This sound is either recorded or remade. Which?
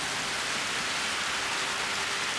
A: recorded